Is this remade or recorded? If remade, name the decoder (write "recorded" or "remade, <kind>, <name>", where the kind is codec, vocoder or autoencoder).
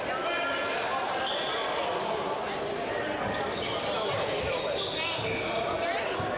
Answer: recorded